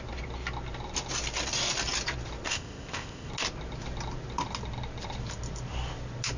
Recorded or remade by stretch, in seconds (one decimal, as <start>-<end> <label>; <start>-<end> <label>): 0.0-2.5 recorded; 2.5-3.3 remade; 3.3-6.4 recorded